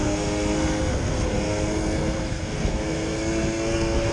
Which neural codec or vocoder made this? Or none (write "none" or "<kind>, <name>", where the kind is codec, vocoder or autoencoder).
codec, SNAC